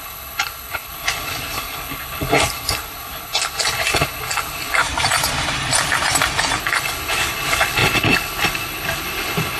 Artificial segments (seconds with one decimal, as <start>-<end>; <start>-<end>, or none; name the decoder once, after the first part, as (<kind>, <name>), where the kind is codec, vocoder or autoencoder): 0.0-4.8 (codec, HILCodec); 6.6-9.6